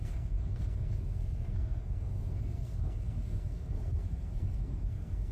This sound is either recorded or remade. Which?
remade